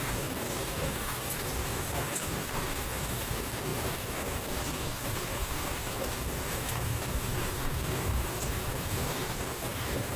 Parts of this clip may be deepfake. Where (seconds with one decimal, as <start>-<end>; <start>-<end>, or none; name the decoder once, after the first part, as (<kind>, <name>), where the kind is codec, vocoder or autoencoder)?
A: 0.0-10.2 (codec, DAC)